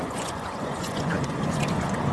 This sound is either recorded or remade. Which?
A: remade